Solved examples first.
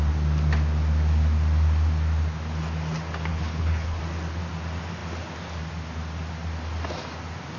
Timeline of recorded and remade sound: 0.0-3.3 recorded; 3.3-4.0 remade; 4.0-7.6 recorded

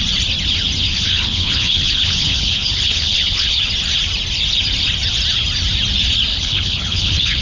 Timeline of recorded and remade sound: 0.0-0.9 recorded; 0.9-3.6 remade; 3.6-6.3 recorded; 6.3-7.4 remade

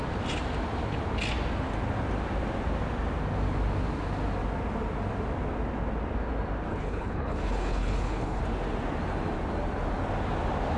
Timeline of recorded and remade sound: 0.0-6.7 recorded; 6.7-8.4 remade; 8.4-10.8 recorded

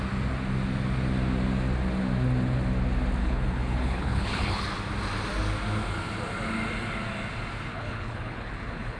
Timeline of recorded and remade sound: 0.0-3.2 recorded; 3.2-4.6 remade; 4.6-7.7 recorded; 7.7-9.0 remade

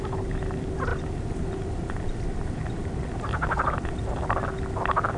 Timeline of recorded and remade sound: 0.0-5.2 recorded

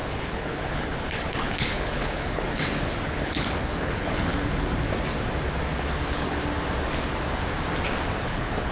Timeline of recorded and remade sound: 0.0-4.3 remade; 4.3-6.0 recorded; 6.0-6.4 remade; 6.4-8.2 recorded; 8.2-8.7 remade

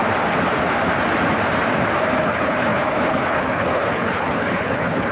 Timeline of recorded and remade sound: 0.0-2.2 recorded; 2.2-5.1 remade